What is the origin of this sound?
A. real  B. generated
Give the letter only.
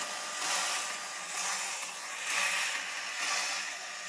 B